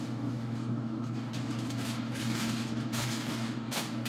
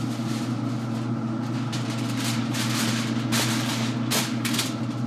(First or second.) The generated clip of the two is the first